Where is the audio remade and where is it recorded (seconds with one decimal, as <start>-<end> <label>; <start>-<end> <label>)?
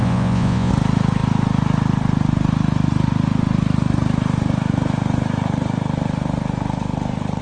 0.0-0.7 remade; 0.7-7.4 recorded